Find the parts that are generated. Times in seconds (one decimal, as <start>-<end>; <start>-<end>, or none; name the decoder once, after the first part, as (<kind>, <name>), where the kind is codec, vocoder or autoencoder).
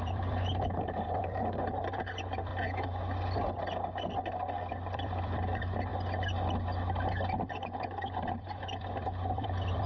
0.0-2.5 (vocoder, BigVGAN v2); 4.7-5.9; 7.4-9.9